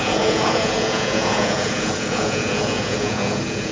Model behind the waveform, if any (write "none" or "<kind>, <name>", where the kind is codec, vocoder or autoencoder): vocoder, Vocos